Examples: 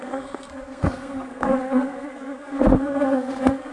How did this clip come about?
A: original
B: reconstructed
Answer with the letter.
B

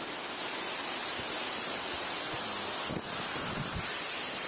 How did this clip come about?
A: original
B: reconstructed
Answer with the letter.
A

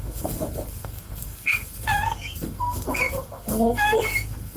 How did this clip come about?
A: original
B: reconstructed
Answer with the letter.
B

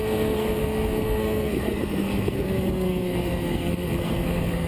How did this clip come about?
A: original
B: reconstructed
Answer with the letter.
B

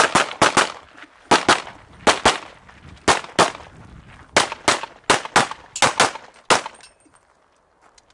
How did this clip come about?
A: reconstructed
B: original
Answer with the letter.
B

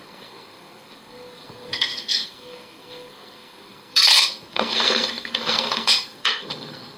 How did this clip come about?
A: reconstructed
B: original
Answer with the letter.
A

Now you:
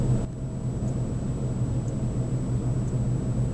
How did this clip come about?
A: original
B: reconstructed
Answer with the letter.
A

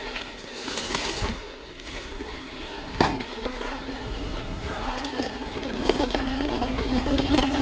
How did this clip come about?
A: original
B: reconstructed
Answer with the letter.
B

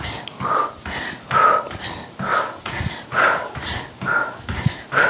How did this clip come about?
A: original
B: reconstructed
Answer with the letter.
A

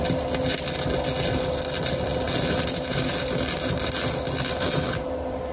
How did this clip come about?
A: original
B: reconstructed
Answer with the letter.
A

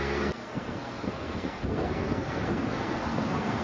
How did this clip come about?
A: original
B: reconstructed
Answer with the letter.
B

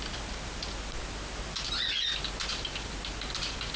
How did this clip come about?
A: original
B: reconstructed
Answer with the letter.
A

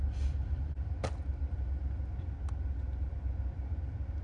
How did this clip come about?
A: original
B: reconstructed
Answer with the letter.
A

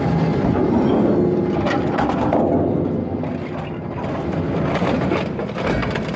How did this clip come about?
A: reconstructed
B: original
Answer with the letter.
B